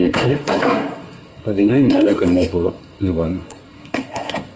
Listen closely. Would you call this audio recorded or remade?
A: remade